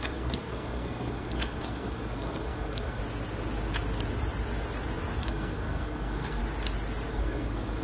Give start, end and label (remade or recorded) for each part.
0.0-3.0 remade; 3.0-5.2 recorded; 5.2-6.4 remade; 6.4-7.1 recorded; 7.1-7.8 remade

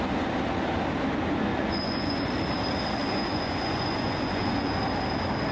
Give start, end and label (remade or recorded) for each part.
0.0-1.5 recorded; 1.5-2.3 remade; 2.3-3.0 recorded; 3.0-4.8 remade; 4.8-5.5 recorded

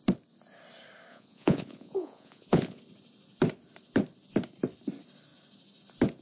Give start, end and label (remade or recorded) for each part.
0.0-1.1 recorded; 1.1-2.8 remade; 2.8-6.2 recorded